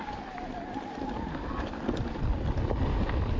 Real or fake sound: real